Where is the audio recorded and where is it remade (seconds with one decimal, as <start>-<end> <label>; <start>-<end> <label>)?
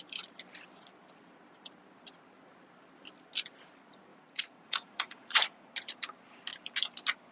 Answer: 0.0-4.1 recorded; 4.1-5.7 remade; 5.7-7.3 recorded